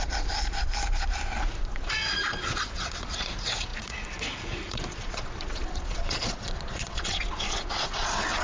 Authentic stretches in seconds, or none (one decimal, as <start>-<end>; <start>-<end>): 0.7-1.6